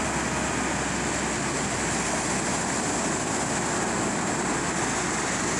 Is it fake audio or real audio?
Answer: real